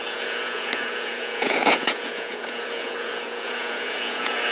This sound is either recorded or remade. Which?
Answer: remade